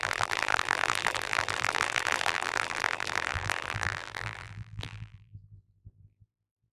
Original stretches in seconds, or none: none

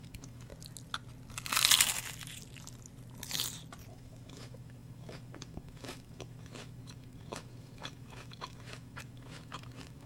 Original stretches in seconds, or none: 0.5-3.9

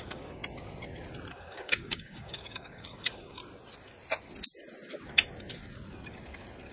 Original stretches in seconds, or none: 0.4-1.3; 3.4-6.7